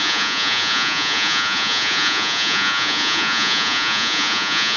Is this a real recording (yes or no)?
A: no